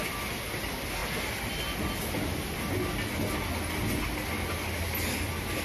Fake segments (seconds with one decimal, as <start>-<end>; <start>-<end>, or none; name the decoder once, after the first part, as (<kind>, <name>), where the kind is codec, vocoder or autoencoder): none